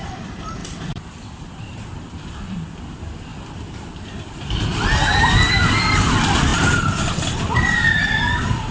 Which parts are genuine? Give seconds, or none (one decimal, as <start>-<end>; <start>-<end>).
6.5-7.2